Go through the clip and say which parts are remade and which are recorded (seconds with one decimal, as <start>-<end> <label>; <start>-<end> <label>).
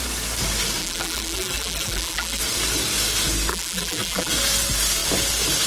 0.0-0.8 recorded; 0.8-2.4 remade; 2.4-3.5 recorded; 3.5-4.3 remade; 4.3-5.7 recorded